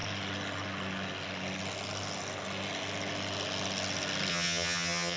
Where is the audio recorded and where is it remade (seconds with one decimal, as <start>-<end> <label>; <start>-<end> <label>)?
0.0-4.3 recorded; 4.3-5.2 remade